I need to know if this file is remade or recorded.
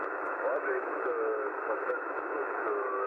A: remade